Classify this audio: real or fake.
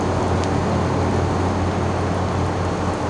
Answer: real